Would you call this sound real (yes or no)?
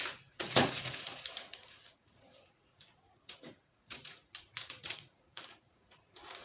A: no